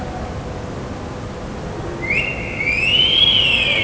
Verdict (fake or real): real